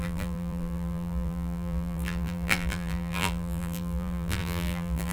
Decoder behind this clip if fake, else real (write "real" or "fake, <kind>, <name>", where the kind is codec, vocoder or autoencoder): fake, vocoder, BigVGAN v2